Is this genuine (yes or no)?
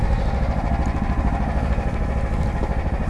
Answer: yes